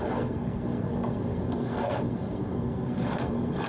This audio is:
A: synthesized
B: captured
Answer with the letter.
A